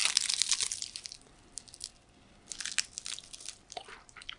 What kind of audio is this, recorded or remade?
recorded